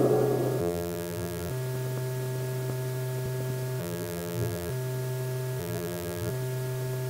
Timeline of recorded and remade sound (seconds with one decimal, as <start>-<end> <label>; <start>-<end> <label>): 0.0-0.6 recorded; 0.6-1.5 remade; 1.5-3.8 recorded; 3.8-4.7 remade; 4.7-5.6 recorded; 5.6-6.3 remade; 6.3-7.1 recorded